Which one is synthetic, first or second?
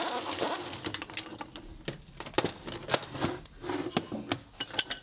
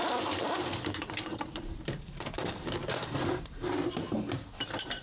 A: second